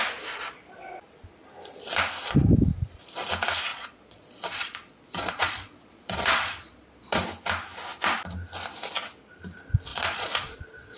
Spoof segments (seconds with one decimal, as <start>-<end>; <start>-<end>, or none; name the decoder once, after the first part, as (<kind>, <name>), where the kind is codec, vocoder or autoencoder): 3.7-7.2 (vocoder, Vocos); 9.9-11.0